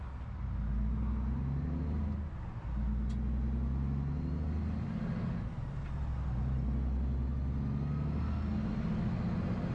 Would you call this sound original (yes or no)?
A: yes